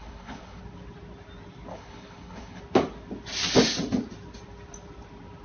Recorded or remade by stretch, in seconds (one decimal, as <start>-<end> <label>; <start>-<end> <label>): 0.0-0.6 remade; 0.6-1.7 recorded; 1.7-2.6 remade; 2.6-5.4 recorded